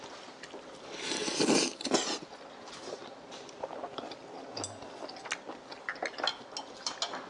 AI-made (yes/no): no